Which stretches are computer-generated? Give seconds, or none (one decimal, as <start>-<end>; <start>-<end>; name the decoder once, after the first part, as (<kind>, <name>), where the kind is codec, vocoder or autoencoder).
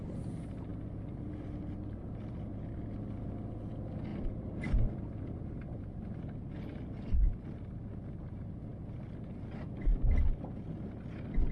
none